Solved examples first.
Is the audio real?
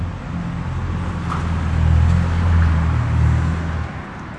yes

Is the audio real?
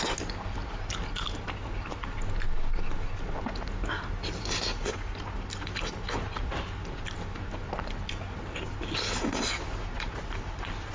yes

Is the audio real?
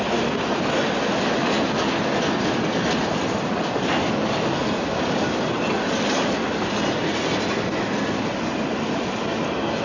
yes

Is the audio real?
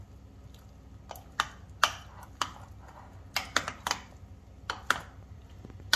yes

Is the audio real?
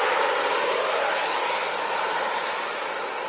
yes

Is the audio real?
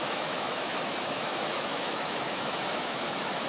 no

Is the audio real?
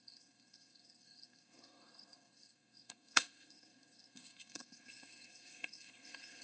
no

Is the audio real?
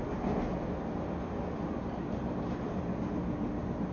yes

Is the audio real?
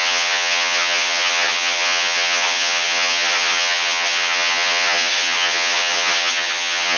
no